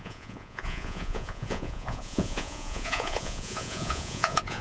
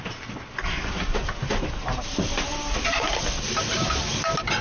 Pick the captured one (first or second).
second